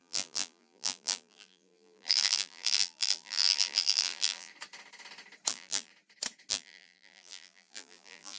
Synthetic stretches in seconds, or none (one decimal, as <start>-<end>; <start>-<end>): 0.0-4.5; 5.5-5.9; 6.5-8.4